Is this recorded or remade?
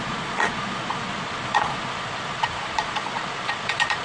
remade